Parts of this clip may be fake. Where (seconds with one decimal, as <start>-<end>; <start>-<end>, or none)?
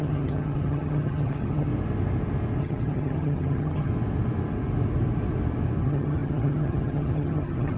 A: 0.0-1.7; 2.6-3.9; 5.8-7.8